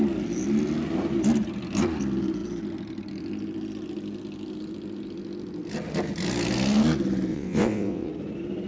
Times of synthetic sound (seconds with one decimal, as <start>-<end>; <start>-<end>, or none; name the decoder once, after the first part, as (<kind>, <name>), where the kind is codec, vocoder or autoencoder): 7.3-8.1 (vocoder, WaveNeXt)